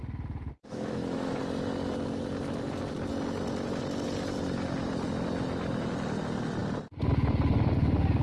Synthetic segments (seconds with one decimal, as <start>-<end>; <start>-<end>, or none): 0.6-1.4